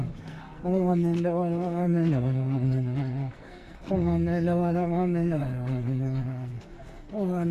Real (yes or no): no